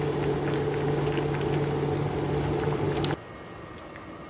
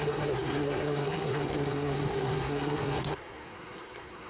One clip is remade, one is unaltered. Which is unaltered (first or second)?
first